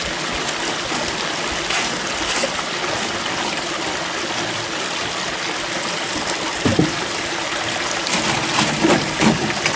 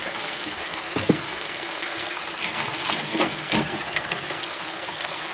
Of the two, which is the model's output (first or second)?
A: second